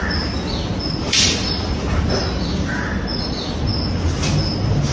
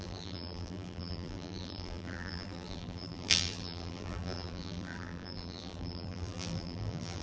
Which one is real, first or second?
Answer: first